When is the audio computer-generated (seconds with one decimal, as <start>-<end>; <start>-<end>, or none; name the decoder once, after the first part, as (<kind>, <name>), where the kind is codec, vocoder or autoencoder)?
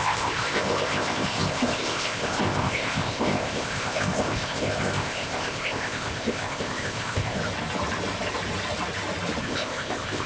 0.0-7.4 (codec, ZipCodec); 9.4-10.3